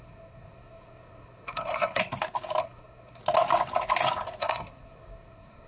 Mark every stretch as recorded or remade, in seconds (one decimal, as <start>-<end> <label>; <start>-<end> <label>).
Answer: 0.0-2.0 remade; 2.0-2.6 recorded; 2.6-3.2 remade; 3.2-4.4 recorded; 4.4-5.7 remade